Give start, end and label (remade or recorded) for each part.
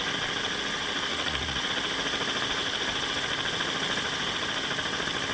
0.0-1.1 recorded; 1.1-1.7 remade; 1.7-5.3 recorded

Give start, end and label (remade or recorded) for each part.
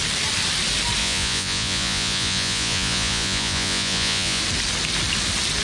0.0-1.0 recorded; 1.0-4.4 remade; 4.4-5.6 recorded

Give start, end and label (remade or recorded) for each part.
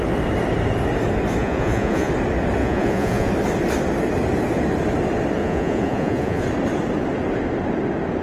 0.0-1.4 recorded; 1.4-2.1 remade; 2.1-2.6 recorded; 2.6-3.3 remade; 3.3-5.4 recorded; 5.4-6.4 remade; 6.4-8.2 recorded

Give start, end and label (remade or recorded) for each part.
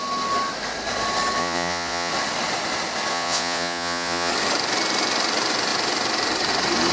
0.0-1.4 recorded; 1.4-2.1 remade; 2.1-3.1 recorded; 3.1-4.3 remade; 4.3-6.9 recorded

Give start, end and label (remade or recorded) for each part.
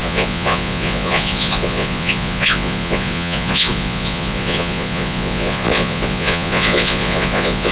0.0-7.7 remade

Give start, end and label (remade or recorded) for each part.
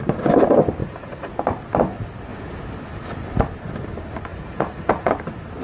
0.0-0.8 recorded; 0.8-1.3 remade; 1.3-4.3 recorded; 4.3-5.1 remade; 5.1-5.6 recorded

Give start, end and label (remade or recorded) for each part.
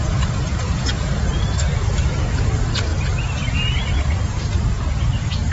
0.0-0.5 recorded; 0.5-1.1 remade; 1.1-5.5 recorded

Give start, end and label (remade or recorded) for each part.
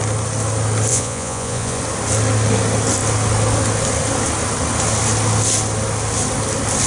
0.0-0.9 recorded; 0.9-1.8 remade; 1.8-6.9 recorded